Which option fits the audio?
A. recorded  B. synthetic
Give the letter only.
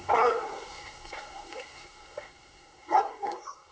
B